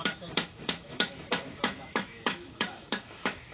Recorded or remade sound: remade